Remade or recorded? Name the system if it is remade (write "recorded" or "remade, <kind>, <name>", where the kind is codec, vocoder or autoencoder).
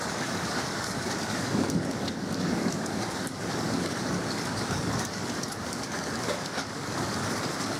remade, codec, DAC